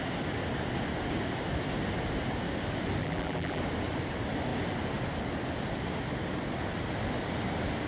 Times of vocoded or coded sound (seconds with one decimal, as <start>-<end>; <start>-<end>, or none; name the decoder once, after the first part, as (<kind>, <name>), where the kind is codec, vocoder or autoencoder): 3.0-3.6 (vocoder, BigVGAN v2)